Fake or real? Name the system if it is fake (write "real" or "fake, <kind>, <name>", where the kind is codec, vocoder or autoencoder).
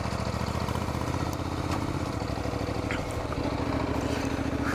real